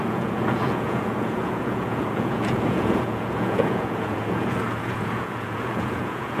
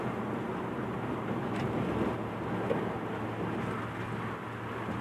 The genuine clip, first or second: second